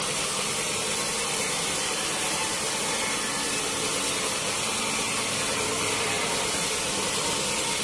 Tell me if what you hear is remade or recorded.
recorded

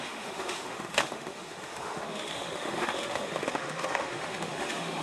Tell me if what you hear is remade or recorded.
remade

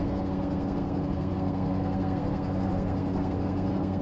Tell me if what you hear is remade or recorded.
remade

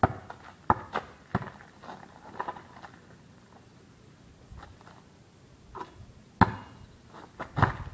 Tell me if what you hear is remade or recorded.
recorded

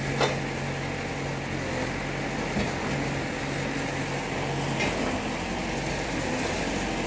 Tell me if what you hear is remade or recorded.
recorded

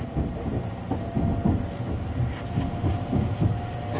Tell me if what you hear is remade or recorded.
recorded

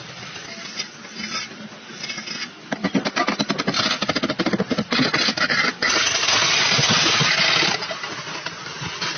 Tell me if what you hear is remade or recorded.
recorded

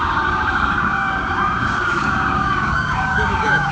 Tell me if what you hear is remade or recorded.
remade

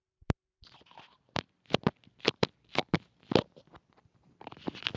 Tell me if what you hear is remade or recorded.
remade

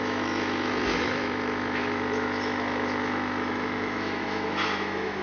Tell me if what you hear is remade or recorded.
remade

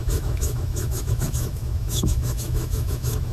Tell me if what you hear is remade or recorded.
remade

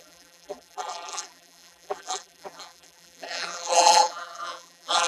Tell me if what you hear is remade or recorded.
remade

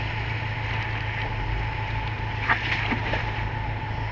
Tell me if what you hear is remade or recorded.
recorded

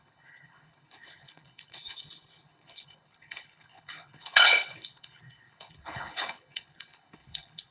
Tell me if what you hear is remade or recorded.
remade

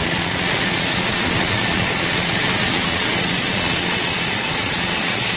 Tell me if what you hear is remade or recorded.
remade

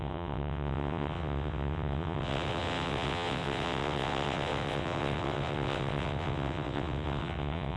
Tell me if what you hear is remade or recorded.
remade